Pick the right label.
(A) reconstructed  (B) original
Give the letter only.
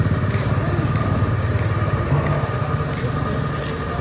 B